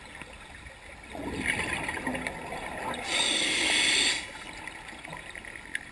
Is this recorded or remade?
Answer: recorded